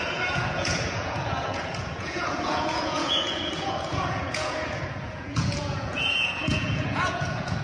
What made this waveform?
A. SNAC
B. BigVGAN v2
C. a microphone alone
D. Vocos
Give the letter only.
D